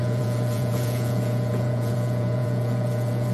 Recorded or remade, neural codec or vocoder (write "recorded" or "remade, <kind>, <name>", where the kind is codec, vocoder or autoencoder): remade, vocoder, Vocos